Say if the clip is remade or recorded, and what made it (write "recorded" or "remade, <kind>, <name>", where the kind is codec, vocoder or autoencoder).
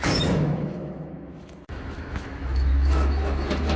remade, autoencoder, DAC-VAE